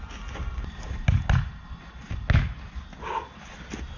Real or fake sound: real